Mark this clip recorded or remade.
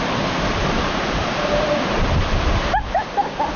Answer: remade